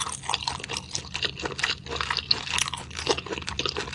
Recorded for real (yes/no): yes